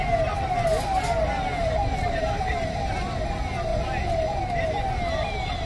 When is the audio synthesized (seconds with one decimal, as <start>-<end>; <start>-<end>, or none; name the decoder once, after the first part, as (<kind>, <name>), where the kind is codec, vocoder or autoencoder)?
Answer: 1.6-2.9 (vocoder, BigVGAN v2); 3.7-4.4